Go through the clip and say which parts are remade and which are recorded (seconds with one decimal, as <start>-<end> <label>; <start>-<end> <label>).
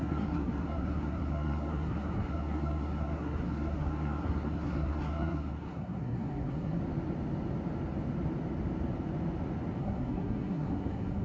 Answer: 0.0-6.8 remade; 6.8-9.8 recorded; 9.8-11.2 remade